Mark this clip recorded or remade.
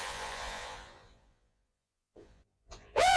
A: remade